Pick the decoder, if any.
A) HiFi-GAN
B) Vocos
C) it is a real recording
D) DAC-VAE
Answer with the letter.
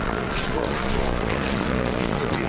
B